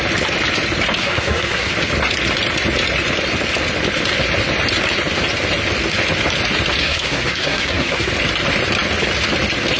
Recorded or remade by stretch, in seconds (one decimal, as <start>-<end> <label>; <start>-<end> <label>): 0.0-1.0 recorded; 1.0-1.7 remade; 1.7-6.8 recorded; 6.8-8.1 remade; 8.1-9.8 recorded